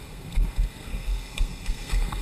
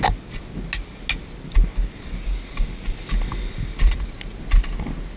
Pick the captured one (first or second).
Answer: second